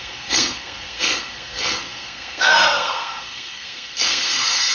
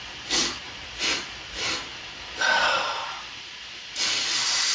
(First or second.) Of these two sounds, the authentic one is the second